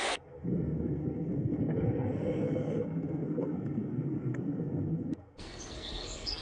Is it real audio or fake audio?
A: fake